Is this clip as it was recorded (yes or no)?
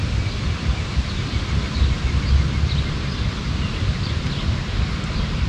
yes